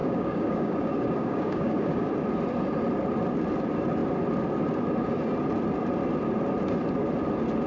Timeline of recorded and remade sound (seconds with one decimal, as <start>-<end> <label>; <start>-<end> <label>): 0.0-2.1 remade; 2.1-7.7 recorded